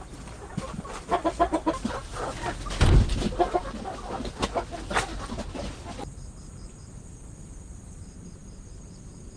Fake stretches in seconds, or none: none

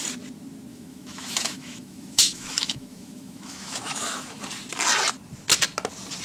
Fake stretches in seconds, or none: 0.7-4.4 (autoencoder, DAC-VAE)

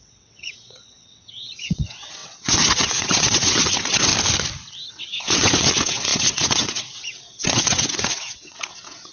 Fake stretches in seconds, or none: 0.0-4.1 (vocoder, WaveNeXt); 4.9-9.1